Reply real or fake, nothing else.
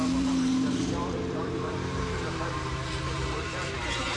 fake